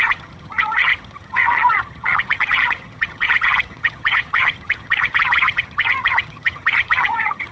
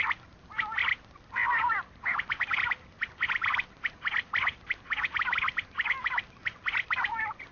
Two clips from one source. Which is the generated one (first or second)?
first